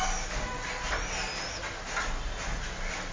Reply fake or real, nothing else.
real